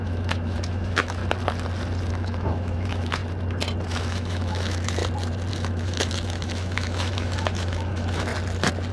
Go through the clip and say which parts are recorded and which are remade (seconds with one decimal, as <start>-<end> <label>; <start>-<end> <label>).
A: 0.0-1.2 remade; 1.2-2.1 recorded; 2.1-3.2 remade; 3.2-3.9 recorded; 3.9-5.0 remade; 5.0-5.5 recorded; 5.5-8.3 remade; 8.3-8.9 recorded